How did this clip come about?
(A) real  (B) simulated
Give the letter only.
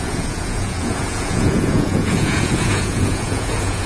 B